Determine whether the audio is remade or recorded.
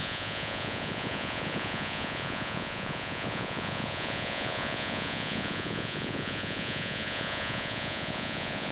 remade